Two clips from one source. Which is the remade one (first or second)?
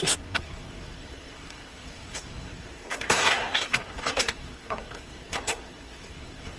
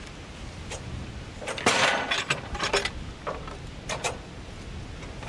first